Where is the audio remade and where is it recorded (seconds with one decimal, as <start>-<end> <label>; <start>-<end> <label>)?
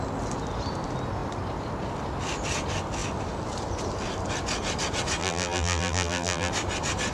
0.0-5.2 recorded; 5.2-6.5 remade; 6.5-7.1 recorded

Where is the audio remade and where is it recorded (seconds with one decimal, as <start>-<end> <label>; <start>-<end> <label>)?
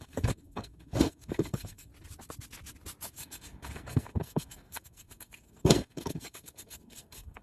0.0-1.9 remade; 1.9-3.1 recorded; 3.1-7.4 remade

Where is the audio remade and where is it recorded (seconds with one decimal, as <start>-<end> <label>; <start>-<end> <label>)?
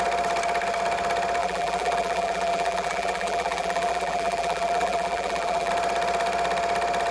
0.0-1.4 recorded; 1.4-5.7 remade; 5.7-7.1 recorded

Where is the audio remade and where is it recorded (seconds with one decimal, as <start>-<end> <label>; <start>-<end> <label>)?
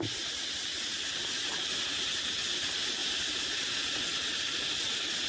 0.0-0.9 recorded; 0.9-1.7 remade; 1.7-5.3 recorded